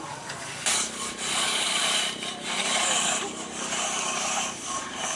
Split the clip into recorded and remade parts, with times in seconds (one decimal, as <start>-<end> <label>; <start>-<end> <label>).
0.0-1.8 remade; 1.8-2.6 recorded; 2.6-5.2 remade